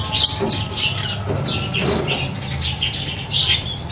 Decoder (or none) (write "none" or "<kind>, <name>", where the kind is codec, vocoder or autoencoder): none